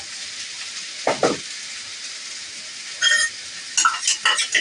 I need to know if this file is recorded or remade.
recorded